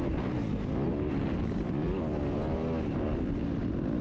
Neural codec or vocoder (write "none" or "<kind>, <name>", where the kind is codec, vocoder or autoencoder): none